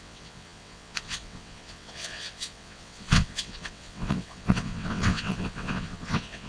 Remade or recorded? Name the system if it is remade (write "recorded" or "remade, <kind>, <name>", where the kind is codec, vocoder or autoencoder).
remade, vocoder, WaveNeXt